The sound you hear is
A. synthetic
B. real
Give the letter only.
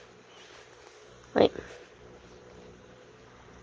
B